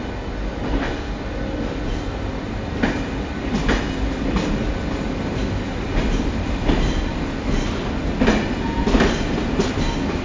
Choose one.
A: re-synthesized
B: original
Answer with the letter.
B